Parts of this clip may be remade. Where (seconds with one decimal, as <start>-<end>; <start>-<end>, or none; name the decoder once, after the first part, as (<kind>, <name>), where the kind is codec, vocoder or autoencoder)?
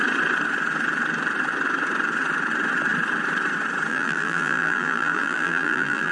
3.9-6.1 (vocoder, BigVGAN v2)